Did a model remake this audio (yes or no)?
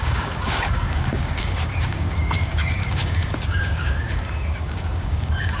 yes